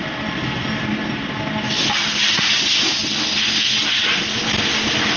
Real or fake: real